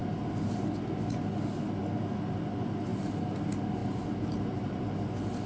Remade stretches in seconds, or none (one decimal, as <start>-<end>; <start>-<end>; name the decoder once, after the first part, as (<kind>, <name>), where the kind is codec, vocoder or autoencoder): 2.9-3.4 (vocoder, BigVGAN v2); 3.8-4.8